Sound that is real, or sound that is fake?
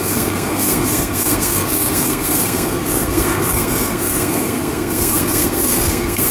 fake